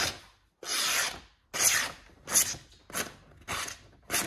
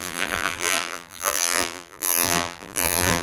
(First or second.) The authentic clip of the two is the first